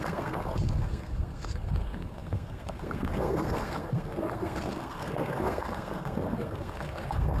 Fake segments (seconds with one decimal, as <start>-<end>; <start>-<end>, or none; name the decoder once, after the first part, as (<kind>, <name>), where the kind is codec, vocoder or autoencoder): 0.0-7.4 (codec, SNAC)